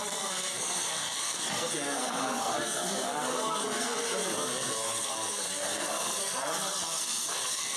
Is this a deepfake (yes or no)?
yes